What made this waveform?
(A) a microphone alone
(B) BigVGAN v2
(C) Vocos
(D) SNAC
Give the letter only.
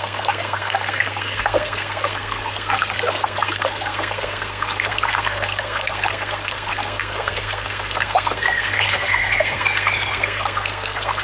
D